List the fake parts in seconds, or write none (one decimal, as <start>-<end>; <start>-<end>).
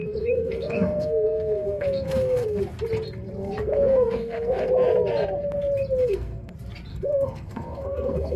0.0-2.6; 3.4-4.7; 6.0-6.5; 6.9-8.4